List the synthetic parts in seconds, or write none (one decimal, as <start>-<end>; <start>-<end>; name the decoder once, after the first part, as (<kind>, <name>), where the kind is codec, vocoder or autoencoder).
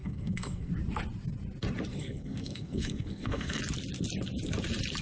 0.0-0.7 (codec, SNAC); 1.9-3.6